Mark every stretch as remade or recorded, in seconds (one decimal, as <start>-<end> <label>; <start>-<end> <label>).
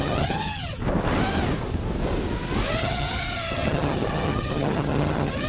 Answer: 0.0-0.8 remade; 0.8-2.8 recorded; 2.8-5.5 remade